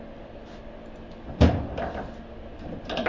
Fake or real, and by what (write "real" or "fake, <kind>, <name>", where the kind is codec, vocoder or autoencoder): real